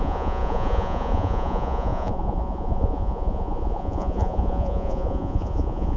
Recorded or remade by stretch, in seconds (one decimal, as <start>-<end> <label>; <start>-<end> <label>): 0.0-6.0 remade